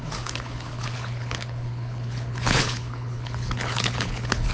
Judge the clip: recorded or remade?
remade